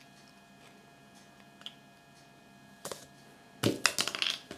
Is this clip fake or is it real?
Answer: real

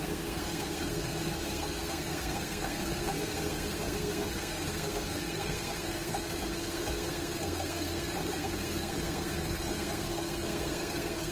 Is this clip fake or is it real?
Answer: fake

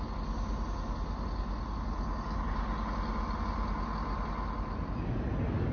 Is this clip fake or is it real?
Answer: real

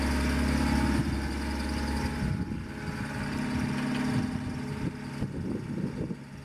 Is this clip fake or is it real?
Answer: real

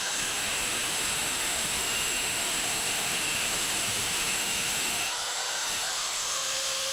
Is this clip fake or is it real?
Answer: fake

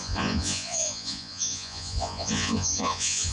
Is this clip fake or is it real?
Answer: fake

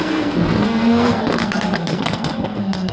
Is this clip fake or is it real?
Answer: fake